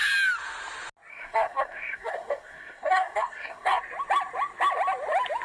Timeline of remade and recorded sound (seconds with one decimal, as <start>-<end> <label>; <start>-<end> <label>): 0.0-1.1 recorded; 1.1-3.8 remade; 3.8-5.4 recorded